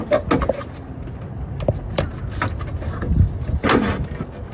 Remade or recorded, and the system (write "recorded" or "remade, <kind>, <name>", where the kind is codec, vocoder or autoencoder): recorded